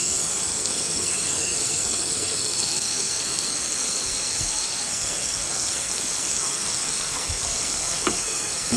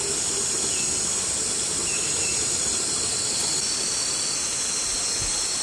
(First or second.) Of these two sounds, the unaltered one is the second